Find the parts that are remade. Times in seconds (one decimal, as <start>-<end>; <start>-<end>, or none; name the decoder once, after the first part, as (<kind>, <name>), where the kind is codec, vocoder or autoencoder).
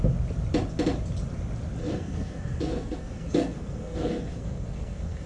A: 1.8-5.3 (codec, SNAC)